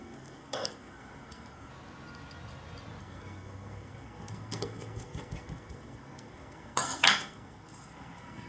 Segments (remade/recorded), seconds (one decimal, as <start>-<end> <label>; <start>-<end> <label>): 0.0-1.7 remade; 1.7-3.0 recorded; 3.0-8.5 remade